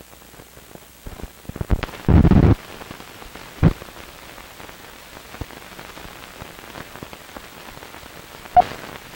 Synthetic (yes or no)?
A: no